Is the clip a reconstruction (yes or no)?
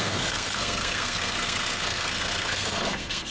yes